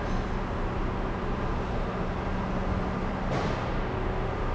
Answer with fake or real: real